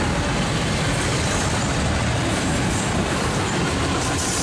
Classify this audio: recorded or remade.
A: remade